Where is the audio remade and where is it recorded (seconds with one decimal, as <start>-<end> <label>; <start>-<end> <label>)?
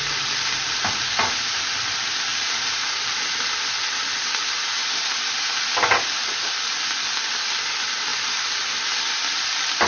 0.0-2.3 recorded; 2.3-3.2 remade; 3.2-8.1 recorded; 8.1-8.9 remade; 8.9-9.9 recorded